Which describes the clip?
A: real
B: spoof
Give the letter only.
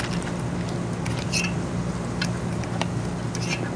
A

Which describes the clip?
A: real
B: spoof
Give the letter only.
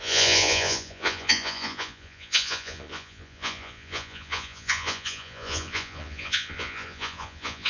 B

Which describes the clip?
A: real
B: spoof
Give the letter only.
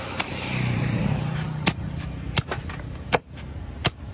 B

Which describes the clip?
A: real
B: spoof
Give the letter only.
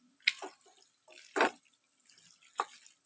A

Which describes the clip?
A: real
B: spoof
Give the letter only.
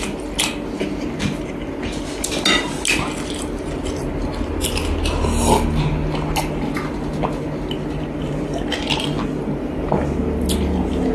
A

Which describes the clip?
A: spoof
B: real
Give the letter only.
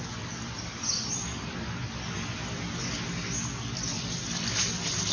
B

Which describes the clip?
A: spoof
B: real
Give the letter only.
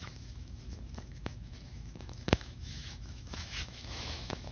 A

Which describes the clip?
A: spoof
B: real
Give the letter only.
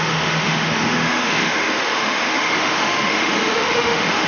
A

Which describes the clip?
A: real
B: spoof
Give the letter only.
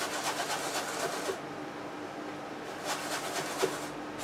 A